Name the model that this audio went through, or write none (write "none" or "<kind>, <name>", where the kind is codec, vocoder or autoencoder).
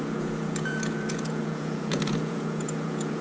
vocoder, Vocos